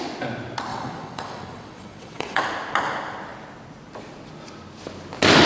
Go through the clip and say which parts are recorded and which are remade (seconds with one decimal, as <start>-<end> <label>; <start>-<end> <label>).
0.0-0.7 recorded; 0.7-2.4 remade; 2.4-5.5 recorded

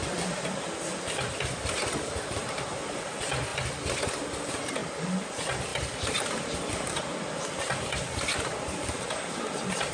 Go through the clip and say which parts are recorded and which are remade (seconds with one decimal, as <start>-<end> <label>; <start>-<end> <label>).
0.0-9.9 recorded

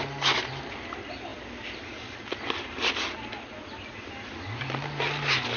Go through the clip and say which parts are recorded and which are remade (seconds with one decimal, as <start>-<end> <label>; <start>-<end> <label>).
0.0-5.6 recorded